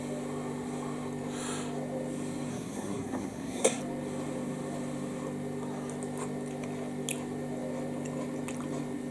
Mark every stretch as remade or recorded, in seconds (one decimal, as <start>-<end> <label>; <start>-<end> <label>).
0.0-2.5 recorded; 2.5-3.8 remade; 3.8-9.1 recorded